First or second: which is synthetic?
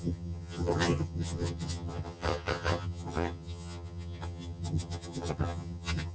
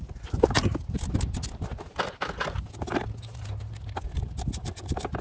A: first